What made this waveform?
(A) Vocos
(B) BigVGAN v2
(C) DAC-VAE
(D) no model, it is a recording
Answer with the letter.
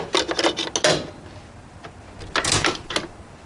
D